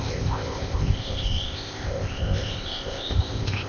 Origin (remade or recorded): remade